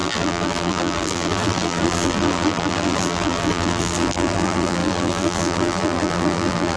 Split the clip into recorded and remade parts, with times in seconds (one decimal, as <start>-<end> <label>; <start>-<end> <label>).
0.0-6.8 remade